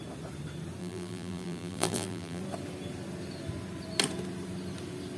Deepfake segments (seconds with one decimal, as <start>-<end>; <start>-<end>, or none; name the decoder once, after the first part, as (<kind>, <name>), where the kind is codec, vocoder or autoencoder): 0.8-2.4 (vocoder, BigVGAN v2)